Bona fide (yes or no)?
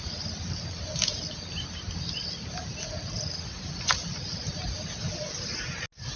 yes